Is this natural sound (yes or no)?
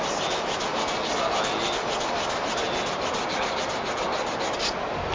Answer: yes